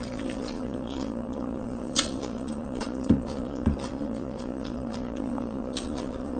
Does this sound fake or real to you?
fake